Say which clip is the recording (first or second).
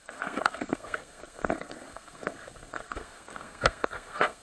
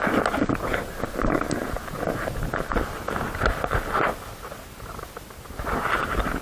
second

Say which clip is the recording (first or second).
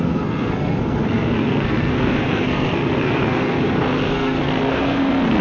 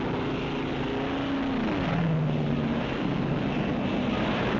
second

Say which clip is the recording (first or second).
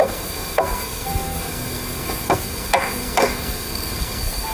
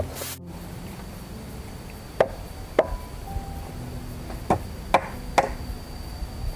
second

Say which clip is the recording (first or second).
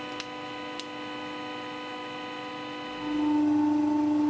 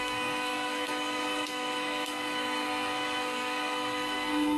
first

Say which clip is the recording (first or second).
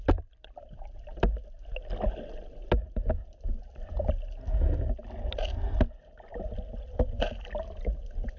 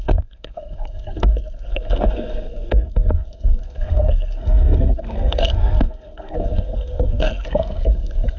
first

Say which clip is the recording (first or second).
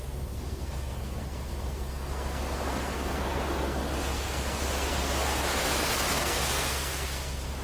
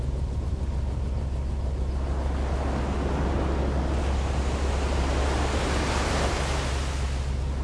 second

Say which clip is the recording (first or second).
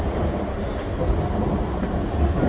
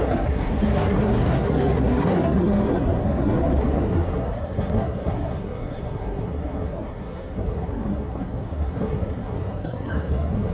first